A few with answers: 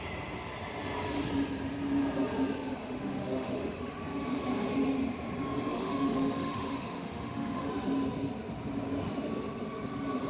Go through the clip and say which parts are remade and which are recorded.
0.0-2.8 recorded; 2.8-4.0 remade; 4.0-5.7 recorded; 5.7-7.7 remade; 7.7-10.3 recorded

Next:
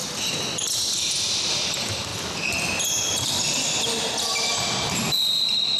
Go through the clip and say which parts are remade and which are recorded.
0.0-2.1 remade; 2.1-5.0 recorded; 5.0-5.8 remade

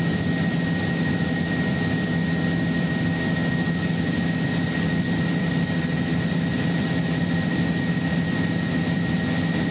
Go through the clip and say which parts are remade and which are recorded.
0.0-6.5 recorded; 6.5-7.3 remade; 7.3-9.7 recorded

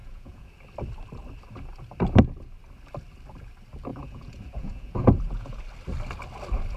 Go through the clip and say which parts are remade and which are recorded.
0.0-0.5 remade; 0.5-3.9 recorded; 3.9-5.6 remade; 5.6-6.8 recorded